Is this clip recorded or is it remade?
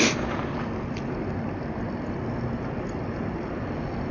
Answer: remade